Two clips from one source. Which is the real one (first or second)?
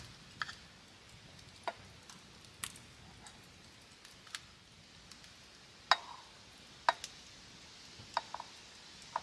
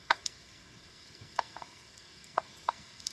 first